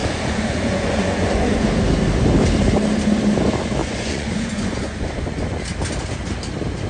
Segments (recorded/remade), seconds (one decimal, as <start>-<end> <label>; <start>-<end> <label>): 0.0-1.7 remade; 1.7-3.8 recorded; 3.8-5.6 remade; 5.6-6.9 recorded